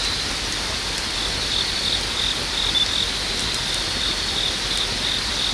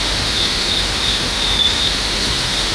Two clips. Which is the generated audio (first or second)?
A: second